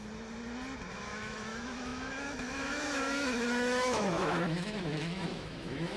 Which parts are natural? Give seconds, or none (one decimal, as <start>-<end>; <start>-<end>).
0.0-0.9